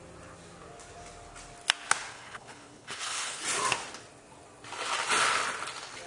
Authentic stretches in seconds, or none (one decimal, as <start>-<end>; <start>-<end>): 0.0-2.1; 3.4-6.1